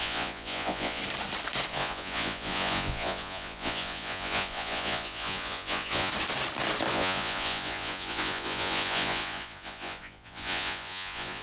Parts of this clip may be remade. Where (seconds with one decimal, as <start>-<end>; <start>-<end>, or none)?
0.0-1.0; 1.7-6.1; 6.9-11.4